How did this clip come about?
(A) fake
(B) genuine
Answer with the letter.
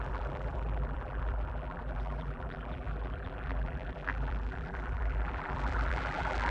A